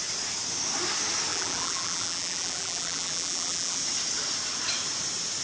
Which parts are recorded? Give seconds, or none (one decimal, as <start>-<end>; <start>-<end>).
0.0-1.3; 3.8-5.4